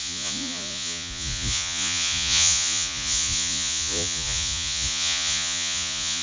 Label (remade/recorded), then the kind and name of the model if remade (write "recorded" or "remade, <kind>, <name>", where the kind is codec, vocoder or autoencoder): remade, vocoder, Vocos